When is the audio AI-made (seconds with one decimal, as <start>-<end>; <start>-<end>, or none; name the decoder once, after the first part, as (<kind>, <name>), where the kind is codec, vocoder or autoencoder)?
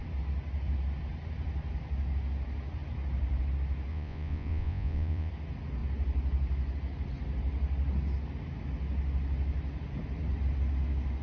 3.9-5.3 (vocoder, Vocos)